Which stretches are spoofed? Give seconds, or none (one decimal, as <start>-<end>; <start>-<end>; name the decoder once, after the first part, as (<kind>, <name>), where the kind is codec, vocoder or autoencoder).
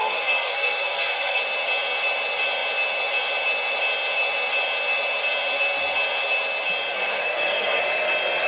0.0-1.4 (codec, SNAC); 6.9-7.8